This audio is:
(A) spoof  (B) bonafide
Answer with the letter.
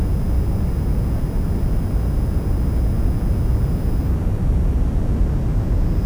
B